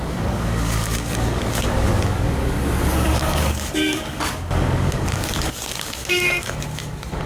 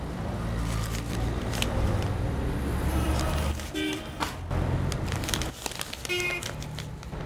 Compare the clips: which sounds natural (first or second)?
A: second